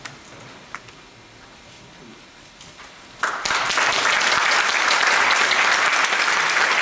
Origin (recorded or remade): recorded